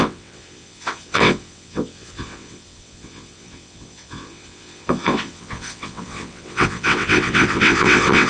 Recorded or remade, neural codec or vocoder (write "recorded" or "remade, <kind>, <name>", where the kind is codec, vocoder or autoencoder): remade, vocoder, WaveNeXt